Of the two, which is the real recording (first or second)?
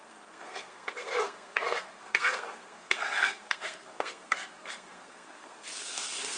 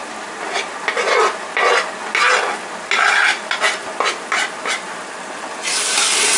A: second